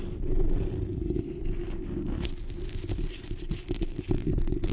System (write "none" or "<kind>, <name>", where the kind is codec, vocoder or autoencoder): none